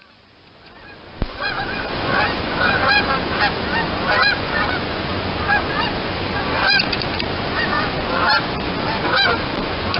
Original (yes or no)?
no